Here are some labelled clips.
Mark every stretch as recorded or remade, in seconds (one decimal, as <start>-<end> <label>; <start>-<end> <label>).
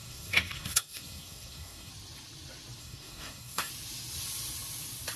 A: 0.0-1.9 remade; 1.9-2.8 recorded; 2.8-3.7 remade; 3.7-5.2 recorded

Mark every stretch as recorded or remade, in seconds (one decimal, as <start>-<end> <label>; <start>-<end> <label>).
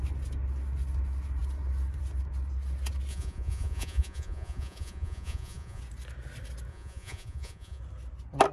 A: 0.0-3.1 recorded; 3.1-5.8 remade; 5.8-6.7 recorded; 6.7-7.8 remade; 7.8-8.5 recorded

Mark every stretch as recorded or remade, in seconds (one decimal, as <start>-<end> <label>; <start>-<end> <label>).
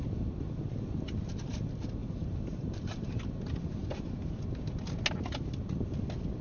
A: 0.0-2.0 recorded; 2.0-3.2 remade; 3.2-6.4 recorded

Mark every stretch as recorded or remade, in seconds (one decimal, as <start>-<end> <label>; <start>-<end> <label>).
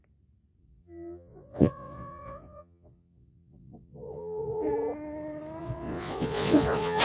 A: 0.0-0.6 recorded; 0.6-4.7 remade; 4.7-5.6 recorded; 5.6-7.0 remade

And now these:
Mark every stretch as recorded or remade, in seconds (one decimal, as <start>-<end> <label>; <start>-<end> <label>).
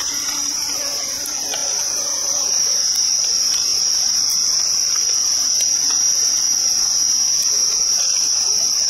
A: 0.0-8.9 recorded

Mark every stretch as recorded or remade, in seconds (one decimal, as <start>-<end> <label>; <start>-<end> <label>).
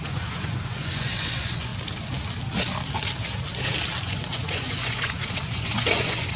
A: 0.0-1.7 remade; 1.7-4.0 recorded; 4.0-6.4 remade